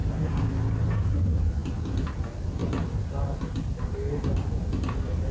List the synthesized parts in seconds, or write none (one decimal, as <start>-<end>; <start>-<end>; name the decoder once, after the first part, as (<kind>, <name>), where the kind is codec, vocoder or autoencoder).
none